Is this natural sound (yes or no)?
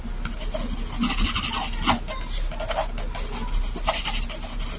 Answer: yes